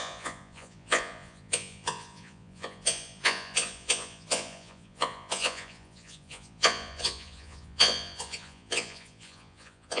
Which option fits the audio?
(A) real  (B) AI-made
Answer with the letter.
B